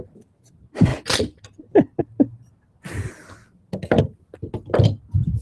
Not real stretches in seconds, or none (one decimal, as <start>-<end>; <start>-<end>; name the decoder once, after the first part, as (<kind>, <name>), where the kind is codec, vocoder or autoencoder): none